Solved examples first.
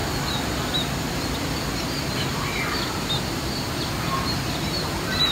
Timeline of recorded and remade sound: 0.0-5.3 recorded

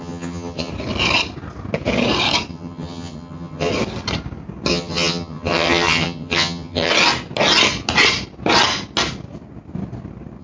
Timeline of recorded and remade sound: 0.0-0.7 remade; 0.7-2.5 recorded; 2.5-3.7 remade; 3.7-4.7 recorded; 4.7-6.9 remade; 6.9-10.4 recorded

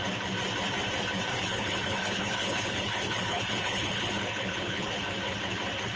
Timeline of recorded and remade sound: 0.0-1.3 recorded; 1.3-4.9 remade; 4.9-6.0 recorded